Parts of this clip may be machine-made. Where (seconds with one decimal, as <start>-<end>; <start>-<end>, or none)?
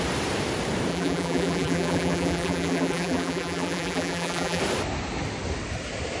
0.9-4.6